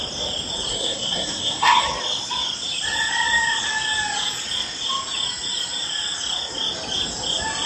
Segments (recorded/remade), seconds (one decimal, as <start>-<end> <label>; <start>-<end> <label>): 0.0-0.7 recorded; 0.7-1.8 remade; 1.8-7.7 recorded